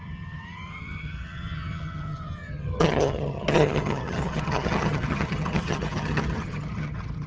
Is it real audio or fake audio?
fake